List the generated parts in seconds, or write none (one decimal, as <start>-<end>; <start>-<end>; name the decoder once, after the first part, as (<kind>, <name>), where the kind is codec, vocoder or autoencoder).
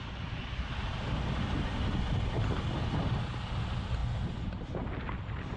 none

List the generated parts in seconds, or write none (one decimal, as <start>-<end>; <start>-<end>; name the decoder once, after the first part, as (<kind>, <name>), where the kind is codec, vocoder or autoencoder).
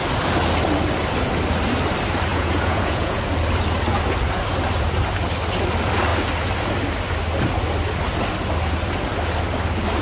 2.3-3.2 (vocoder, Vocos)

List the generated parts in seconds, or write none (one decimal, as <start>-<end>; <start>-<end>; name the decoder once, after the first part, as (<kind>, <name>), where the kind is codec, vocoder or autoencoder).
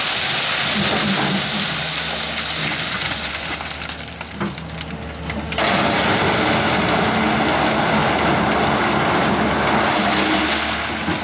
2.6-3.6 (vocoder, Vocos)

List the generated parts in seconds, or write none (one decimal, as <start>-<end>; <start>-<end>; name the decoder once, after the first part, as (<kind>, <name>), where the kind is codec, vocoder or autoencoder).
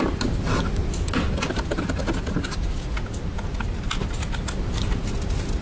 none